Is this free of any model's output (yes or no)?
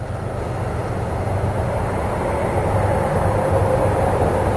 no